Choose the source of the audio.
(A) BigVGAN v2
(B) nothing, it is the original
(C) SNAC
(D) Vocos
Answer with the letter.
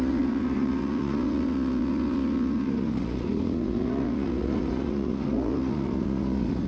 D